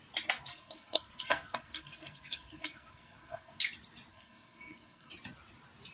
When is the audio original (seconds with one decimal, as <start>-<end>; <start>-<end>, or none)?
0.0-0.5; 3.6-4.1; 5.1-5.9